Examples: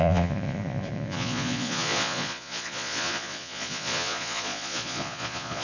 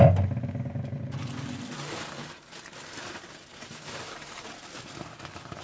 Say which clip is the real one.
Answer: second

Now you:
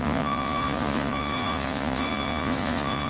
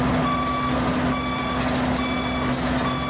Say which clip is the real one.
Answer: second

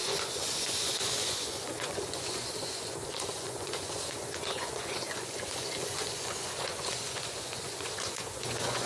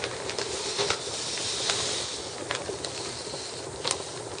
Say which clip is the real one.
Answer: second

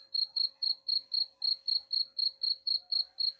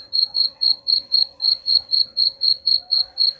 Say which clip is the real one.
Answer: first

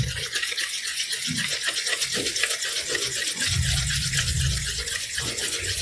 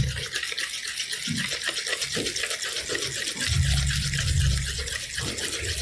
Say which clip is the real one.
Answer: second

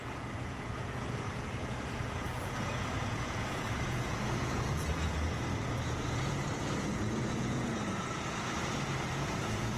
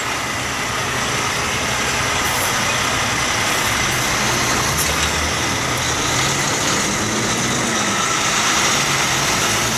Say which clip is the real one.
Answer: second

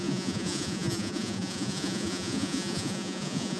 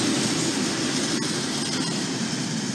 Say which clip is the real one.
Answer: second